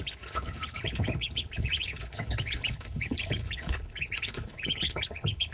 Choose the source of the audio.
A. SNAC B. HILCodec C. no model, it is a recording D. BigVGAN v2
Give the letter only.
B